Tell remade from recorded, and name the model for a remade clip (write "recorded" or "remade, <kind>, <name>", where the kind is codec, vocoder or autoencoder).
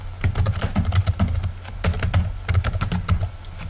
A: recorded